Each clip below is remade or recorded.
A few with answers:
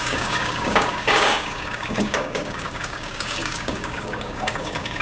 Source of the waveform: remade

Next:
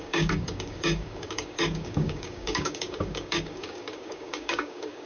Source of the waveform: remade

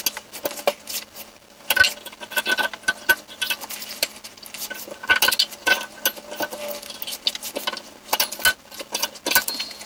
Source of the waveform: recorded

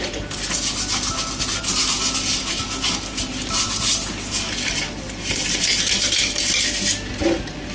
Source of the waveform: recorded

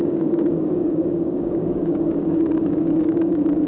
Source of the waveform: remade